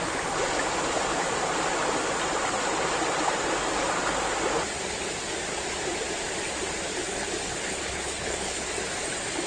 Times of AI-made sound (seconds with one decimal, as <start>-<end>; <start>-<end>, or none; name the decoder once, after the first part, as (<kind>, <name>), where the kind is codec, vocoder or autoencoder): 6.9-8.7 (codec, HILCodec)